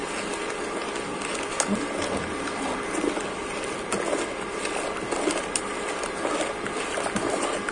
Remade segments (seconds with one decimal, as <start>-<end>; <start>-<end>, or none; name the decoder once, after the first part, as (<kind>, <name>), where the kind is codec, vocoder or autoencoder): none